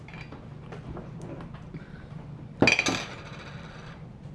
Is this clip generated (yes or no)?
no